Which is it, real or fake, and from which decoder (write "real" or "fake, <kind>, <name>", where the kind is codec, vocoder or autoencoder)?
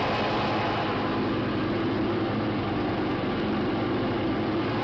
real